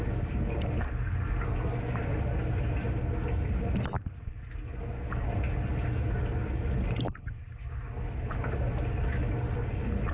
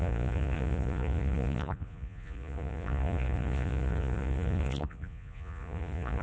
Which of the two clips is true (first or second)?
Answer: first